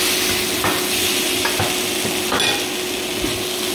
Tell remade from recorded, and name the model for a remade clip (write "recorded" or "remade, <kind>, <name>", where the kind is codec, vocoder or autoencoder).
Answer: recorded